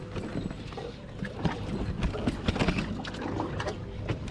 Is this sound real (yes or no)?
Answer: yes